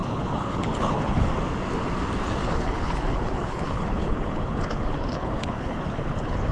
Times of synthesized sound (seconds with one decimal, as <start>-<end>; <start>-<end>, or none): 0.0-1.3; 2.4-6.5

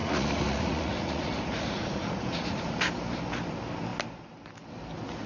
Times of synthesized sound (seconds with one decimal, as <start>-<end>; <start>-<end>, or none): 0.0-2.8